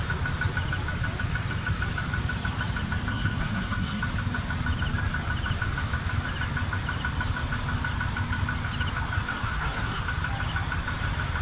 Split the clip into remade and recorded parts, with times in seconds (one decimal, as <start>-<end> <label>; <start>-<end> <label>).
0.0-3.1 recorded; 3.1-4.0 remade; 4.0-9.3 recorded; 9.3-10.0 remade; 10.0-11.4 recorded